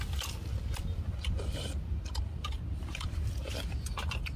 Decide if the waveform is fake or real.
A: real